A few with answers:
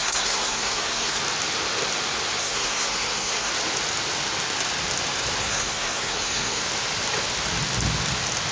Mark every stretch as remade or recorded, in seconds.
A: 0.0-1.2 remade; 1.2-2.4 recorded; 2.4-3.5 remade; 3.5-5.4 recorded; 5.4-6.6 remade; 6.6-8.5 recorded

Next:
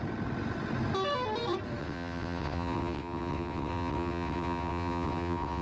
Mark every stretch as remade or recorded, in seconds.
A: 0.0-1.8 recorded; 1.8-5.6 remade

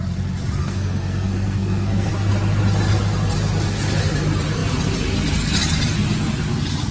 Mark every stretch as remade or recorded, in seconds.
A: 0.0-0.6 recorded; 0.6-2.1 remade; 2.1-6.9 recorded

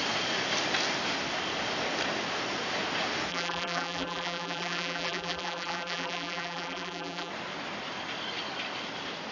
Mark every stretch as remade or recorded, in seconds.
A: 0.0-3.3 recorded; 3.3-7.3 remade; 7.3-9.3 recorded

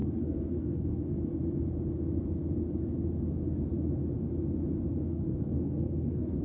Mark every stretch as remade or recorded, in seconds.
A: 0.0-1.0 remade; 1.0-5.0 recorded; 5.0-6.4 remade